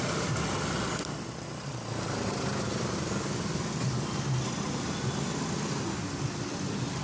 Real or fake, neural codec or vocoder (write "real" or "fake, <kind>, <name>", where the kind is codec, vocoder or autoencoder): real